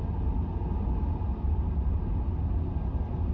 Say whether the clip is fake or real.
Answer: real